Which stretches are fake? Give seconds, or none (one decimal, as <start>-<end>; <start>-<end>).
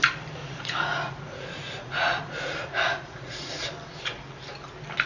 0.4-3.5